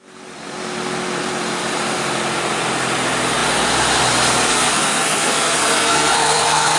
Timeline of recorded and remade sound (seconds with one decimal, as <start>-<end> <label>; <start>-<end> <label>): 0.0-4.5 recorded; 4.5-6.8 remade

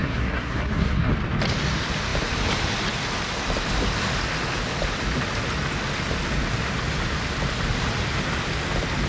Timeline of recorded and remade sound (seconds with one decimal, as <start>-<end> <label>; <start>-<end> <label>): 0.0-1.1 remade; 1.1-9.1 recorded

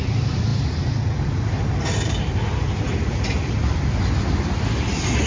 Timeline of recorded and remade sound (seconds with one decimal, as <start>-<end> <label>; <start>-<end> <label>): 0.0-5.3 recorded